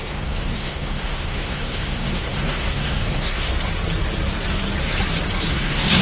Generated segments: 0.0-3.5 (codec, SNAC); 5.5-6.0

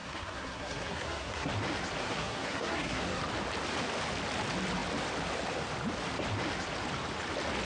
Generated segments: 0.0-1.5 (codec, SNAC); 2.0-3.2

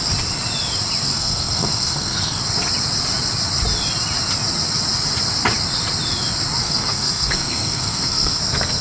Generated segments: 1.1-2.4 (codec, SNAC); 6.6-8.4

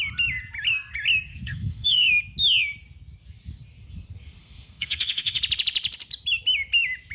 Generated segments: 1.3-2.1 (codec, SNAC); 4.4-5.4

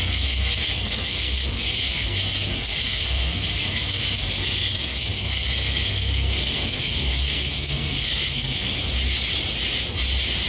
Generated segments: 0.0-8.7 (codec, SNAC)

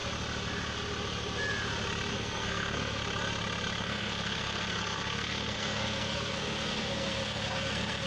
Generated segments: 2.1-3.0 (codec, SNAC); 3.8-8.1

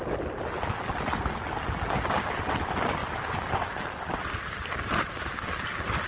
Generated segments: none